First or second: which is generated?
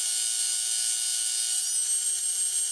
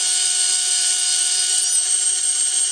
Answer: second